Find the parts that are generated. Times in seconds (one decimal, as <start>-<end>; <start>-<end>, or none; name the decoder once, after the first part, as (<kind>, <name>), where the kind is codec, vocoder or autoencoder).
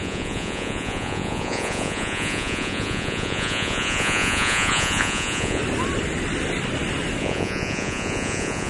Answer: 0.0-5.6 (vocoder, Vocos); 7.2-8.7